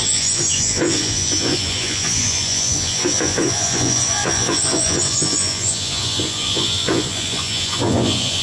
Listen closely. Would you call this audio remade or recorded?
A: remade